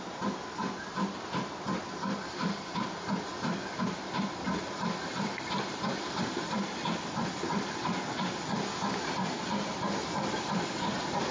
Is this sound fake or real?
real